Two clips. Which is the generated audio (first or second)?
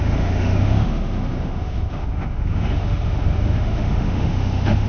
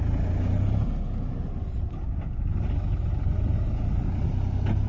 first